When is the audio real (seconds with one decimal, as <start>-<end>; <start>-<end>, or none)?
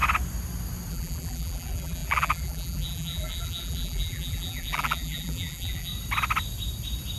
0.0-0.9; 5.9-7.2